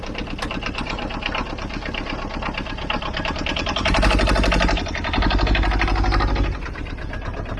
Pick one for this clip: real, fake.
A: real